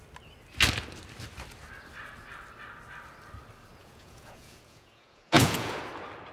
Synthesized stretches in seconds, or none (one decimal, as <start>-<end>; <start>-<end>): 3.7-5.8

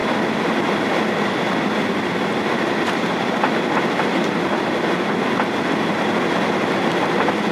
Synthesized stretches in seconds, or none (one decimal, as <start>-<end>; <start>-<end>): none

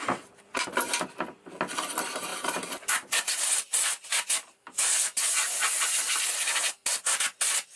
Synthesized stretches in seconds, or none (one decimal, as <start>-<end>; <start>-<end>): 0.5-1.6; 2.3-6.7

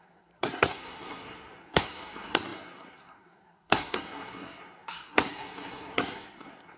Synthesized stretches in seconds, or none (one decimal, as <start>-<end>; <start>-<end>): 0.0-6.8